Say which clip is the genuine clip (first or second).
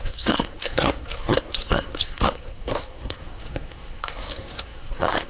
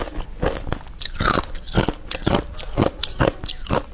second